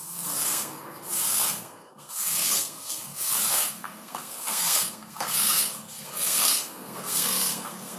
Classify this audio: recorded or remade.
remade